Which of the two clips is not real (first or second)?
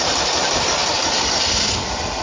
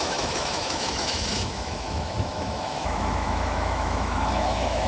second